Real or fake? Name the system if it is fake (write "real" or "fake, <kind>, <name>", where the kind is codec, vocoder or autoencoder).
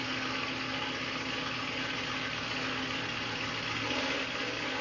real